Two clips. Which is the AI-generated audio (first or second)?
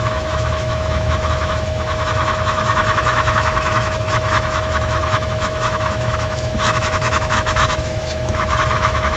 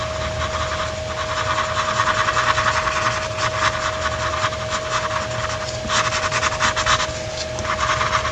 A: first